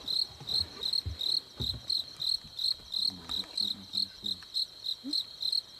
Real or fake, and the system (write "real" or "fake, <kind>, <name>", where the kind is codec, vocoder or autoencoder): real